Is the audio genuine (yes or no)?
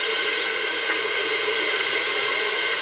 no